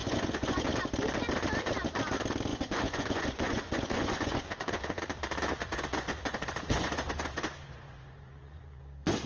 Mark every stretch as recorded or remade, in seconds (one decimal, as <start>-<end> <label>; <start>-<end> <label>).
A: 0.0-0.6 remade; 0.6-2.5 recorded; 2.5-5.0 remade; 5.0-5.6 recorded; 5.6-8.8 remade; 8.8-9.3 recorded